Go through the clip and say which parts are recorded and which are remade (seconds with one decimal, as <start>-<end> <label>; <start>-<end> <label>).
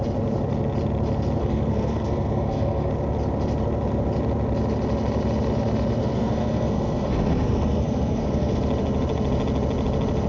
0.0-1.4 recorded; 1.4-2.9 remade; 2.9-6.0 recorded; 6.0-8.6 remade; 8.6-10.3 recorded